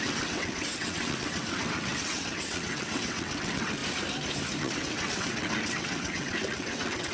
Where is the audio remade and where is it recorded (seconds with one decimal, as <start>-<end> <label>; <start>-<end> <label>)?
0.0-3.8 remade; 3.8-4.6 recorded; 4.6-7.1 remade